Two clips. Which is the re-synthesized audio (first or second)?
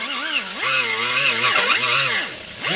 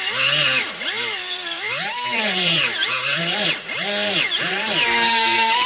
second